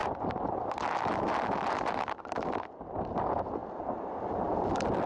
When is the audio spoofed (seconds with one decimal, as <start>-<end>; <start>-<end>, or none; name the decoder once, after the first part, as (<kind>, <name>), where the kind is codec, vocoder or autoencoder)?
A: none